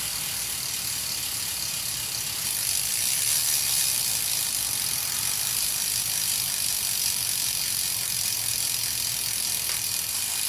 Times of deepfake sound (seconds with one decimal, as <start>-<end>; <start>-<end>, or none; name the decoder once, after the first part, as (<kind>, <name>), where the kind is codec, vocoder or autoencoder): 0.0-8.5 (vocoder, BigVGAN v2); 9.4-10.5